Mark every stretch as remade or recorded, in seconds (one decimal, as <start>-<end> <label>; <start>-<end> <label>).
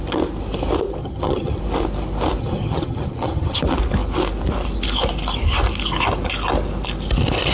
0.0-1.0 recorded; 1.0-1.6 remade; 1.6-2.4 recorded; 2.4-3.6 remade; 3.6-7.5 recorded